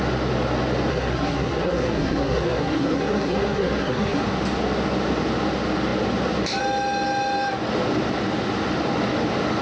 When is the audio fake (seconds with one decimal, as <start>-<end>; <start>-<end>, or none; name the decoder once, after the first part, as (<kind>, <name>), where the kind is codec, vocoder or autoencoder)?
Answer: 0.9-4.2 (codec, SNAC)